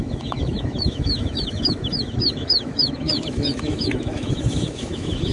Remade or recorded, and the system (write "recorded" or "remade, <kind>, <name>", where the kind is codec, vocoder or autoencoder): remade, autoencoder, DAC-VAE